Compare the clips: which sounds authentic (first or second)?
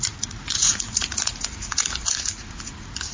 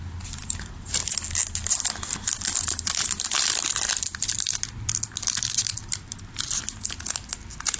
second